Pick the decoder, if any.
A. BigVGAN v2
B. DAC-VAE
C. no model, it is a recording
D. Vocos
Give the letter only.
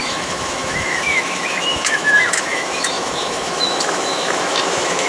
B